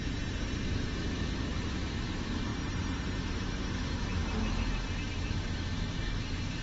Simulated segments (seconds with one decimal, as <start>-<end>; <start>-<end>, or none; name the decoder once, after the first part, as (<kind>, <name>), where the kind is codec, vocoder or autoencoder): 0.6-2.5 (autoencoder, DAC-VAE); 3.2-6.6